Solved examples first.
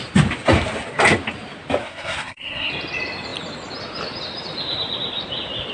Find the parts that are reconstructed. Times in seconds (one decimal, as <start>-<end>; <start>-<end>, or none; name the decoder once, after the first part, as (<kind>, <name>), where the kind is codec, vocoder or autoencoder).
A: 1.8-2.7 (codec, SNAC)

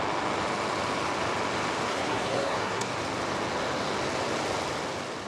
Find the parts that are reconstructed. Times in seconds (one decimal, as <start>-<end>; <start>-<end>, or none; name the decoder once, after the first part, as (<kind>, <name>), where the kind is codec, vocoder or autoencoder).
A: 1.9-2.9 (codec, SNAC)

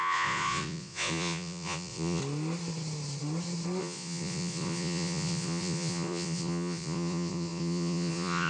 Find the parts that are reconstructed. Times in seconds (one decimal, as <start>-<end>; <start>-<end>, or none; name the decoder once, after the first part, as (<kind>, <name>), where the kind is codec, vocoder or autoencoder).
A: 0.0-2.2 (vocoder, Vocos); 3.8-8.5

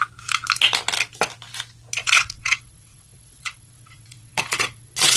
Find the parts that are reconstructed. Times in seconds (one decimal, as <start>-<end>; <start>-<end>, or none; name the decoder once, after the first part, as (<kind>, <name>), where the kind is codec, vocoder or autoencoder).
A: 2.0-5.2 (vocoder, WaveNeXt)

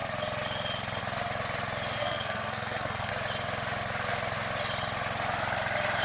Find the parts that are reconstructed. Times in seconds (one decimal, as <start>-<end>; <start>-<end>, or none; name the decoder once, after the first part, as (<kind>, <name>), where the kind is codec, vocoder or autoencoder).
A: 2.0-3.1 (codec, SNAC)